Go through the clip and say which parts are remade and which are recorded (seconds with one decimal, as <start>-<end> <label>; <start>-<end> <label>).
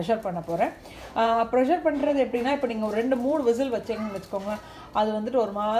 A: 0.0-0.9 recorded; 0.9-1.5 remade; 1.5-2.0 recorded; 2.0-3.4 remade; 3.4-5.8 recorded